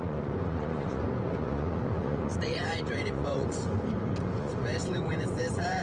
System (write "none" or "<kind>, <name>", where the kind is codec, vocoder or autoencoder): vocoder, Vocos